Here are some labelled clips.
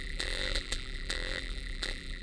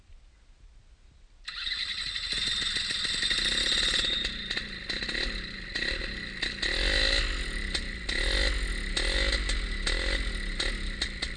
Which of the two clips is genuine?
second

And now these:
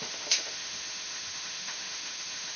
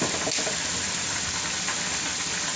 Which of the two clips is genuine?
second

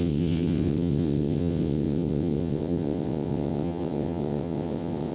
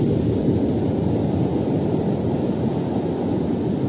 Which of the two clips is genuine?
second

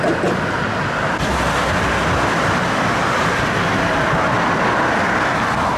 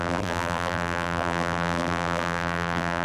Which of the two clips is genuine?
first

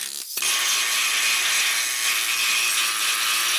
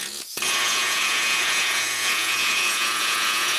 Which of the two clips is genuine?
first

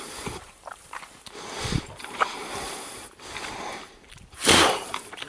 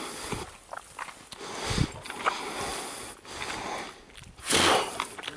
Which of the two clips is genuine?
second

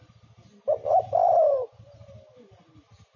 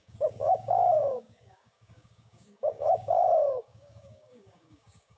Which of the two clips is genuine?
first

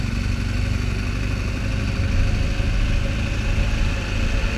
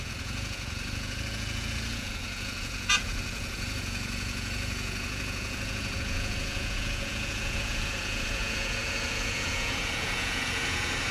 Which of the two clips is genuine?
first